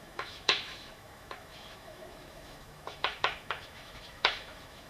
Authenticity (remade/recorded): remade